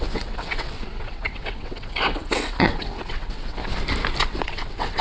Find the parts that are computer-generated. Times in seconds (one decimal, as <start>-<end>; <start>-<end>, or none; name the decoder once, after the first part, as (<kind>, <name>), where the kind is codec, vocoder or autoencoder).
0.0-3.6 (vocoder, WaveNeXt); 4.2-5.0